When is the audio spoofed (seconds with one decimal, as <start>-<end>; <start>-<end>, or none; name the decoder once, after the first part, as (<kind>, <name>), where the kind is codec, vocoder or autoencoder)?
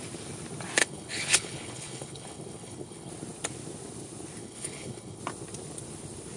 0.8-3.1 (codec, HILCodec); 4.4-5.2